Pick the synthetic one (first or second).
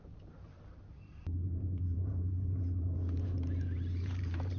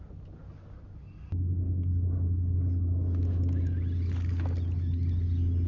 first